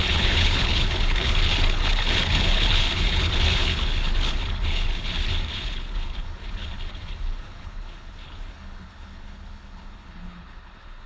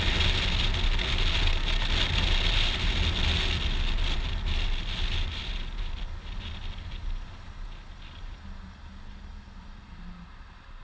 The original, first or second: second